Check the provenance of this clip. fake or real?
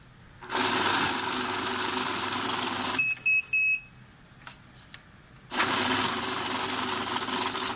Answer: real